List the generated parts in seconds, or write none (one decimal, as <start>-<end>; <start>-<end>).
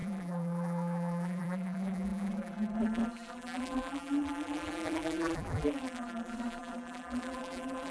0.0-7.9